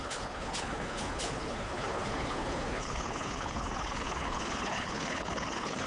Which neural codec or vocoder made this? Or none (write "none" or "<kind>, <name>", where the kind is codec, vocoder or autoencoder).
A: codec, HILCodec